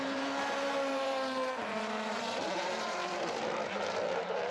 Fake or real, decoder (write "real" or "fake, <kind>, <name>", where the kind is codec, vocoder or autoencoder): fake, vocoder, BigVGAN v2